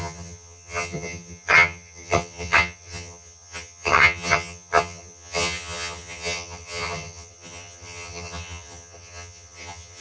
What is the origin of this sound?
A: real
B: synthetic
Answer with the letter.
B